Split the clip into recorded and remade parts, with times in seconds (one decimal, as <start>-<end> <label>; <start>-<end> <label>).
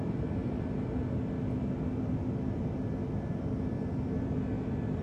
0.0-5.0 recorded